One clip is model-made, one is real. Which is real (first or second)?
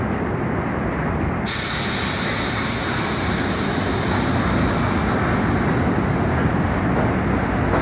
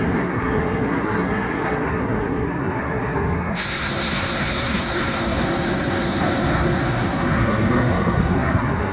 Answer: first